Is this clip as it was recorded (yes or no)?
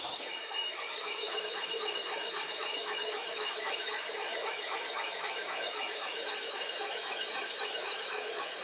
no